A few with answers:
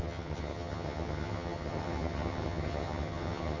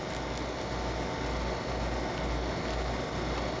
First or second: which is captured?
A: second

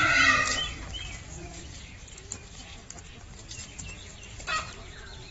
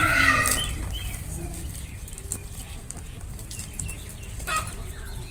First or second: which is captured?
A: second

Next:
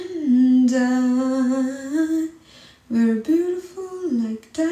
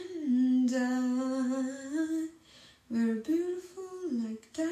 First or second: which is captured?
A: first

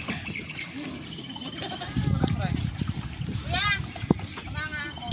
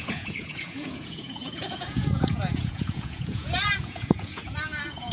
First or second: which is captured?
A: first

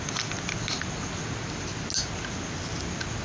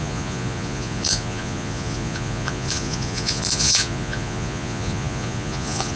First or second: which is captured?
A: first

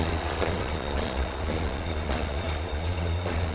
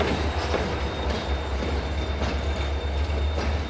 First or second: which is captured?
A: second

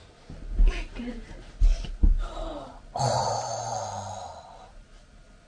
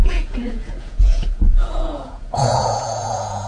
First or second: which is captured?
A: first